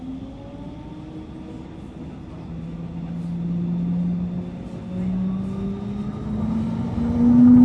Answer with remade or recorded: recorded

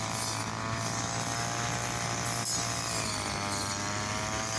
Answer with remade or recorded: recorded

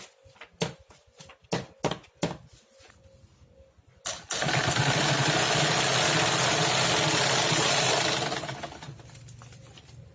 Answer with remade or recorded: recorded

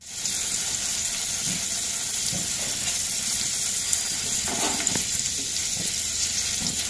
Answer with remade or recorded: recorded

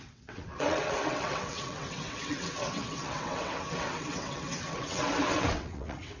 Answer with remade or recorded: remade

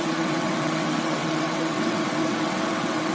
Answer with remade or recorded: remade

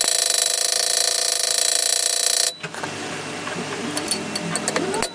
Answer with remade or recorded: recorded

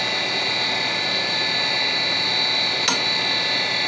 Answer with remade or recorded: recorded